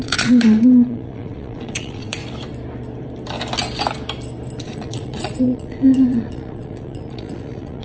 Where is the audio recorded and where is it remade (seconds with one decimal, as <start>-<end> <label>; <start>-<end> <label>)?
0.0-2.2 remade; 2.2-4.6 recorded; 4.6-7.8 remade